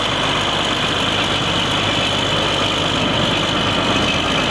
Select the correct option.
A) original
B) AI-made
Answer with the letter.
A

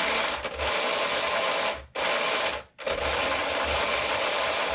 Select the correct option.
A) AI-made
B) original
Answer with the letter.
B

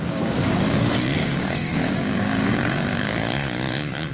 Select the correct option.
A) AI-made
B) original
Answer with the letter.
A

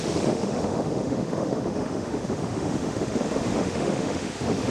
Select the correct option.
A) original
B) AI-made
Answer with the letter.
B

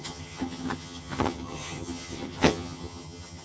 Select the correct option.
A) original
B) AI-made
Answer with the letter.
B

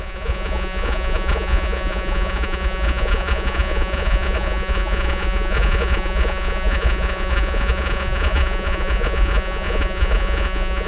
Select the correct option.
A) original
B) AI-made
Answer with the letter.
B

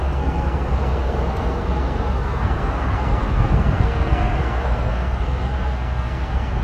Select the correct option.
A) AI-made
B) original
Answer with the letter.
A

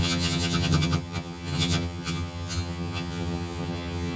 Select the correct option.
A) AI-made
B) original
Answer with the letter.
A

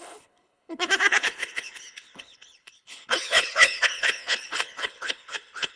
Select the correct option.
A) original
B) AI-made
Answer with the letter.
B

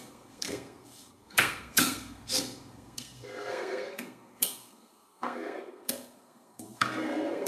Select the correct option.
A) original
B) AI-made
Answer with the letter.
B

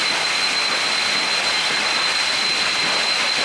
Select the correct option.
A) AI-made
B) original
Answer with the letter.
B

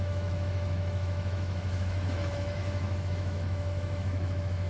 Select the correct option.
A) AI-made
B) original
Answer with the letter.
A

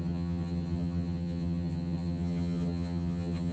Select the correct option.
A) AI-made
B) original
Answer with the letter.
A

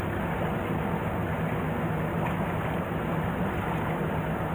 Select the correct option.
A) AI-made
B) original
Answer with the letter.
B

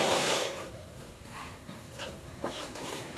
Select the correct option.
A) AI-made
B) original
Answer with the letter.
A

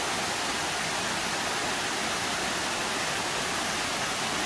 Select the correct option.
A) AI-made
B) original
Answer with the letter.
B